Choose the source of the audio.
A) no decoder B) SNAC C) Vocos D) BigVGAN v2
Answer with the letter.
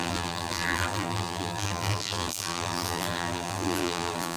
D